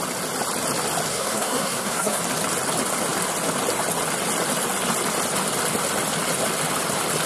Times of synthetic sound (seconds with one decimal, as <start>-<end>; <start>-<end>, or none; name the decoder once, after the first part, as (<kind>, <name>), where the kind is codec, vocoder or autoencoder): 1.1-2.2 (codec, SNAC)